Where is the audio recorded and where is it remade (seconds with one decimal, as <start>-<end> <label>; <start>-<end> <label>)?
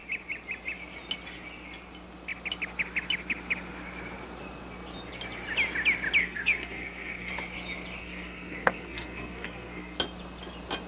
0.0-6.2 recorded; 6.2-7.3 remade; 7.3-8.0 recorded; 8.0-10.0 remade; 10.0-10.9 recorded